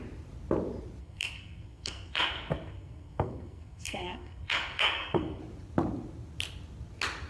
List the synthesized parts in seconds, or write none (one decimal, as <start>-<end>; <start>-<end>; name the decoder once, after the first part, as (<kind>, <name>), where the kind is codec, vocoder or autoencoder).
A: 1.0-5.4 (codec, SNAC)

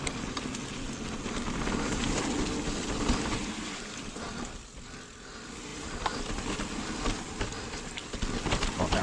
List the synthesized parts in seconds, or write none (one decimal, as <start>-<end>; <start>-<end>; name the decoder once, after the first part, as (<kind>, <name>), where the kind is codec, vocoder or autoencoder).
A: 5.7-6.2 (vocoder, BigVGAN v2)

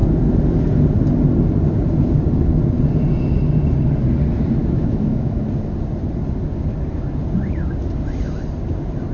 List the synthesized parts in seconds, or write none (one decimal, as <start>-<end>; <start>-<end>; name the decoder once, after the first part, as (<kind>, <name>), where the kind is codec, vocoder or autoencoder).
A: 4.6-5.4 (autoencoder, DAC-VAE)

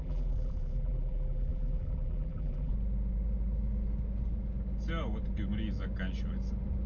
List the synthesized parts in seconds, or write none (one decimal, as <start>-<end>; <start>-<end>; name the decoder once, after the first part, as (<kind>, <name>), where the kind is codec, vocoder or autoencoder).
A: 0.0-2.7 (vocoder, BigVGAN v2)

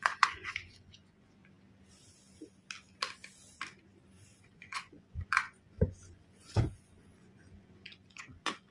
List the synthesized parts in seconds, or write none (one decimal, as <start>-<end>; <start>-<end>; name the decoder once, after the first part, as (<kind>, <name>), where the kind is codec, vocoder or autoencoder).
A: 0.0-1.4 (vocoder, Vocos); 4.4-8.7

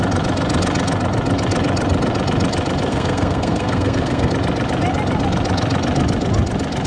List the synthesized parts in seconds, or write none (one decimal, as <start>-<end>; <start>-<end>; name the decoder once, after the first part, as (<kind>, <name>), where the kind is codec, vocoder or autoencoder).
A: 2.9-4.3 (codec, SNAC)

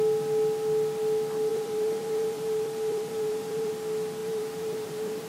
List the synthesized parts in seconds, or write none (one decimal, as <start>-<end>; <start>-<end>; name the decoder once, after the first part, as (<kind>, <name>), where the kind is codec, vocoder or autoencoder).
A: 1.5-3.7 (vocoder, BigVGAN v2); 4.2-5.3